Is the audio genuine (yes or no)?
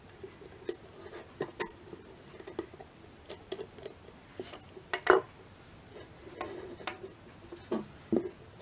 yes